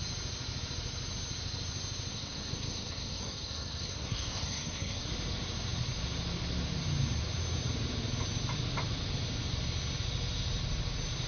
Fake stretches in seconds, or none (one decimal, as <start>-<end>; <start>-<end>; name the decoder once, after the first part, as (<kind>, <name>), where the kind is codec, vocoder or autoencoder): 2.1-5.1 (codec, SNAC)